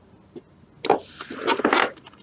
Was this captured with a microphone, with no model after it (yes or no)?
yes